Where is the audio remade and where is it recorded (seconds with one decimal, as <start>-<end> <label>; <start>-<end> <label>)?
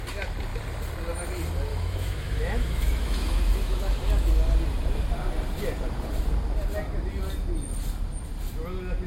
0.0-1.7 recorded; 1.7-4.3 remade; 4.3-9.1 recorded